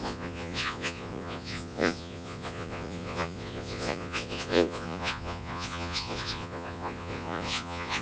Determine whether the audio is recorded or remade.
remade